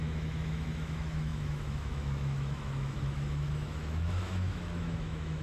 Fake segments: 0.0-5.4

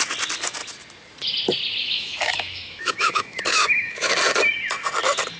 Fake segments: 1.8-4.1

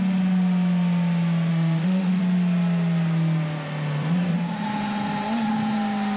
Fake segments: 1.5-2.2

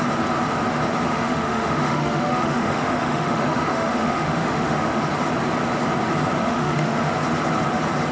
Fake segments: 1.1-5.0; 6.4-7.1

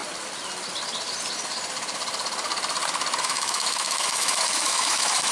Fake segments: 3.2-5.3